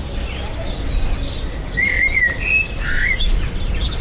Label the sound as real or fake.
real